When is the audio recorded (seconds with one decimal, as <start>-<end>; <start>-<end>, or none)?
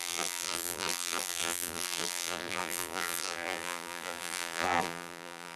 none